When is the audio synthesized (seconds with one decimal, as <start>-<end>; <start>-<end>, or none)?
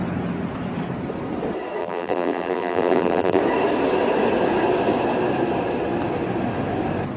1.8-3.4